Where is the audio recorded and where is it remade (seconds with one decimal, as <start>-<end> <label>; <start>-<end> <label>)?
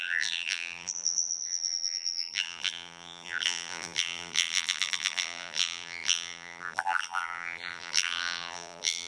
0.0-9.1 remade